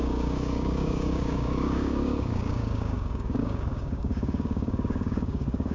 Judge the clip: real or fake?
fake